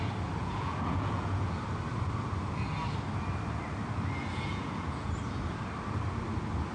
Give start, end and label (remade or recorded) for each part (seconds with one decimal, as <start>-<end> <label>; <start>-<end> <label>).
0.0-0.4 recorded; 0.4-1.6 remade; 1.6-4.3 recorded; 4.3-5.1 remade; 5.1-6.7 recorded